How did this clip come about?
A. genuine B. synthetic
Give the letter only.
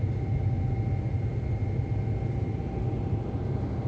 A